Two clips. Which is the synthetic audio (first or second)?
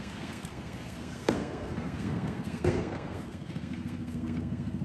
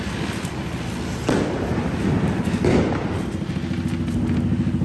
first